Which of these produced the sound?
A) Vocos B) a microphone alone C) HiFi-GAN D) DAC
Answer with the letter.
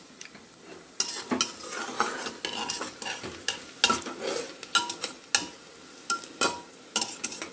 B